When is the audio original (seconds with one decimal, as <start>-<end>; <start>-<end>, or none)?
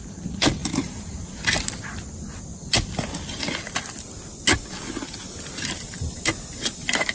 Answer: 0.0-7.1